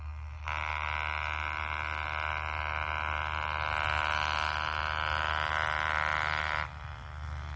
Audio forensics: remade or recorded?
recorded